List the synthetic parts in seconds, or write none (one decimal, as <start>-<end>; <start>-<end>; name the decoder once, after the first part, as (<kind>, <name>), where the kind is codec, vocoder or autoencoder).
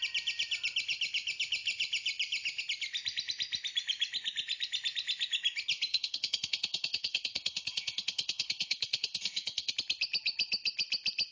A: 5.9-9.7 (codec, SNAC)